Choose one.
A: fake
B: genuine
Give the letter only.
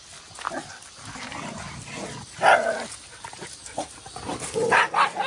B